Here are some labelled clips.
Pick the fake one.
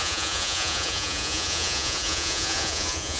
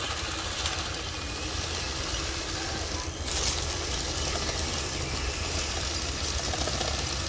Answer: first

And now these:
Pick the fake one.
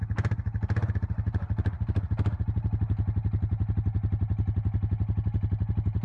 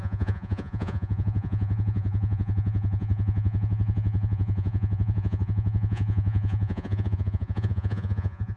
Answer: second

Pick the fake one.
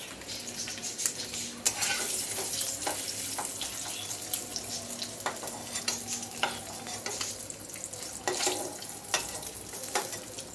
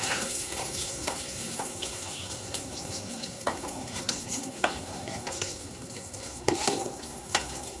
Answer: second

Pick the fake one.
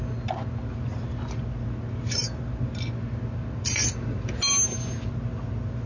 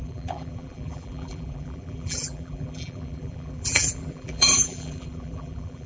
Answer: second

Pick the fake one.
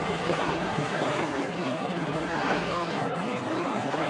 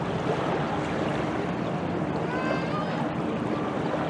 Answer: first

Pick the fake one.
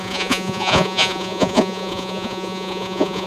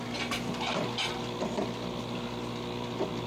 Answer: first